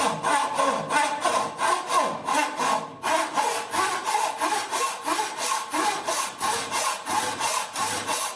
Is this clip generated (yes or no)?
no